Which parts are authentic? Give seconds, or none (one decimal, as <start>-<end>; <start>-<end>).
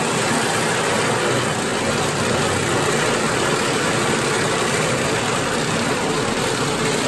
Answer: 0.0-7.1